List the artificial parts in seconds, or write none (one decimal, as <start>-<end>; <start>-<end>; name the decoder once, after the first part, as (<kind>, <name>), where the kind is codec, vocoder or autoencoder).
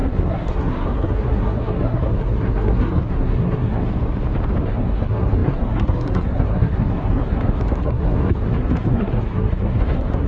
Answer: 0.0-3.9 (codec, SNAC); 4.6-10.3